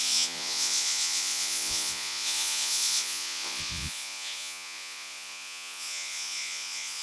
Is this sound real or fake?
fake